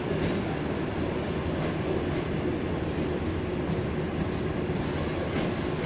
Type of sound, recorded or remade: recorded